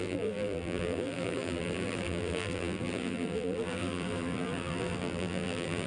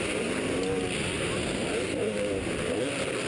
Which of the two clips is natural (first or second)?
second